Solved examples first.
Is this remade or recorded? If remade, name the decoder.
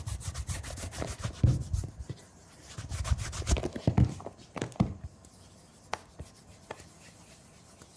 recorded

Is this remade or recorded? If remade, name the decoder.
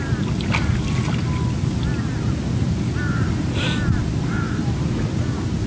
recorded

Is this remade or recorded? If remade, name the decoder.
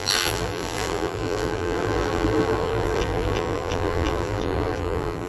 remade, vocoder, BigVGAN v2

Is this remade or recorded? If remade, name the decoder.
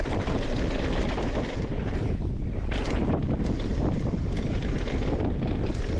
recorded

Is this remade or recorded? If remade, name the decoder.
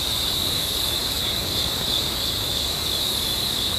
remade, codec, DAC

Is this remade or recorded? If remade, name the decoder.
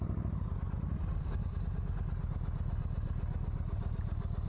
recorded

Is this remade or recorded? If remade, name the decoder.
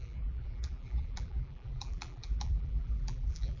remade, vocoder, BigVGAN v2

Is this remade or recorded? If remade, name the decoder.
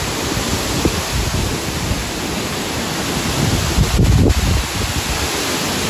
recorded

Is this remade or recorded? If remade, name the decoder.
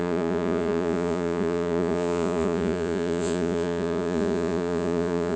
remade, vocoder, Vocos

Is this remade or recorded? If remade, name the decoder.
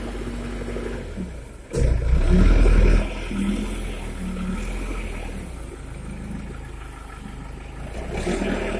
recorded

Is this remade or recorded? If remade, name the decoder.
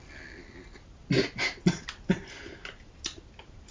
recorded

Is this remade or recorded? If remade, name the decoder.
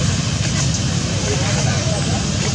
recorded